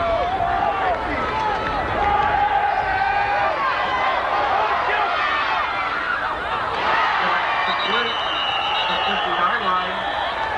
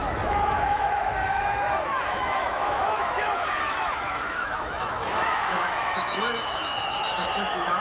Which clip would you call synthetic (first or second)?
second